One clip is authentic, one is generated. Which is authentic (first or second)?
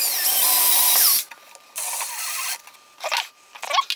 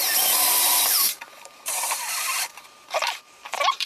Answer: first